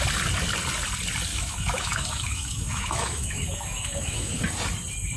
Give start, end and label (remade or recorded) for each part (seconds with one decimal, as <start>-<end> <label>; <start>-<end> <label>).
0.0-1.3 recorded; 1.3-4.4 remade; 4.4-5.2 recorded